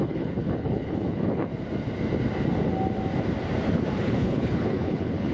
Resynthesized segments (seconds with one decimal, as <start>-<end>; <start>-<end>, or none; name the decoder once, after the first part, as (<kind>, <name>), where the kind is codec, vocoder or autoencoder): 0.0-1.5 (codec, HILCodec); 4.0-5.3